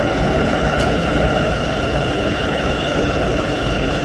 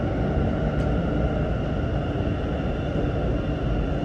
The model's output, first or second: first